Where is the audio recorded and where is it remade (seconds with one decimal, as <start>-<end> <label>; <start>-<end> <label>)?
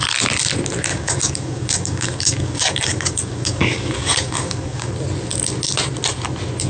0.0-0.9 recorded; 0.9-4.9 remade; 4.9-6.7 recorded